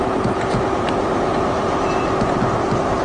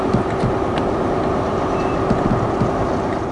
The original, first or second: first